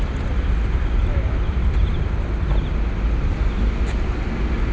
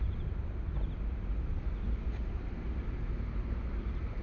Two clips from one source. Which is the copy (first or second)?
second